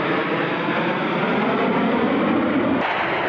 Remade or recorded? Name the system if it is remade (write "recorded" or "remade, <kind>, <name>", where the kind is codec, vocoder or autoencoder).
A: recorded